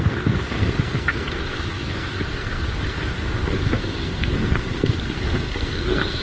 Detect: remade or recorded remade